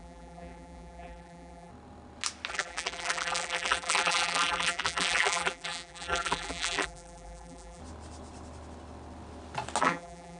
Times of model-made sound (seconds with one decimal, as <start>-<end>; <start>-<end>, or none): 0.0-1.7; 2.5-7.8; 9.8-10.4

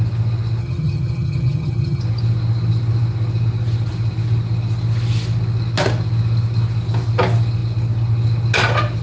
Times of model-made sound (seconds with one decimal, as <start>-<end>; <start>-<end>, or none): 0.6-2.0

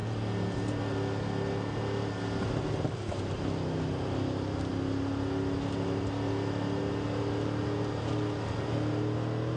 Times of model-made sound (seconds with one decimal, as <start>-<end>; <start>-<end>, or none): none

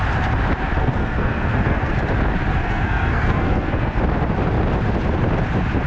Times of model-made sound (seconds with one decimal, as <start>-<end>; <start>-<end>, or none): 0.8-1.9; 2.5-4.0